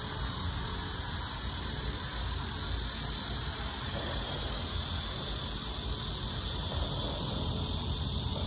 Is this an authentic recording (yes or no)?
yes